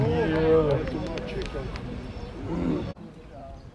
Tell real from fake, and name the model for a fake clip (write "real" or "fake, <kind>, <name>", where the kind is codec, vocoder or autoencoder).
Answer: real